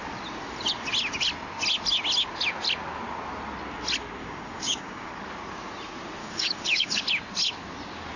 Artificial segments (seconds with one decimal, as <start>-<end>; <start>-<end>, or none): 4.2-5.1; 6.2-7.0